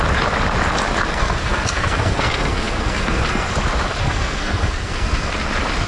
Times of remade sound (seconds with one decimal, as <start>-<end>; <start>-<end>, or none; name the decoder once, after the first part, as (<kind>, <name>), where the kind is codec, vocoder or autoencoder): 1.1-3.5 (codec, SNAC); 4.0-5.3